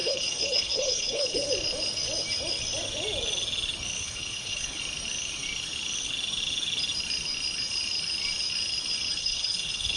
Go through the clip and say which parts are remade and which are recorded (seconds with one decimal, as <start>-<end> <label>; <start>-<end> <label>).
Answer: 0.0-1.5 remade; 1.5-4.0 recorded; 4.0-4.8 remade; 4.8-9.2 recorded; 9.2-10.0 remade